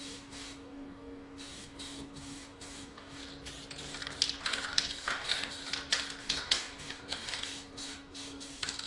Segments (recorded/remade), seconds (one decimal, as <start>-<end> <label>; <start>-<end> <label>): 0.0-3.2 remade; 3.2-4.4 recorded; 4.4-5.6 remade; 5.6-6.2 recorded; 6.2-8.9 remade